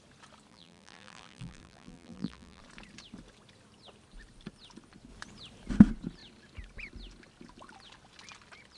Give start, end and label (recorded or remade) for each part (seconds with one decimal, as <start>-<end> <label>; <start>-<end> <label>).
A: 0.0-0.5 recorded; 0.5-2.6 remade; 2.6-8.8 recorded